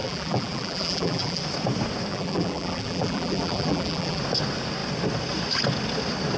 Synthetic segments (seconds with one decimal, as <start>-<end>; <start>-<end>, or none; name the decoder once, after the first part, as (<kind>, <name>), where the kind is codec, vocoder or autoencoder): 0.0-1.4 (vocoder, BigVGAN v2); 2.1-4.2